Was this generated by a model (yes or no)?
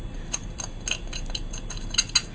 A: no